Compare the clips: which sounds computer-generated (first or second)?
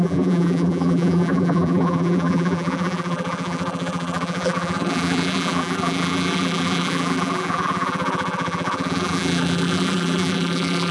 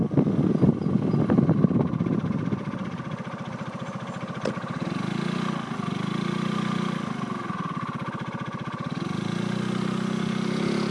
first